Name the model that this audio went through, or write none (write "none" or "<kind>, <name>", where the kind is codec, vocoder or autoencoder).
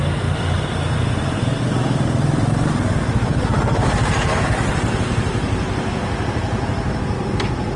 none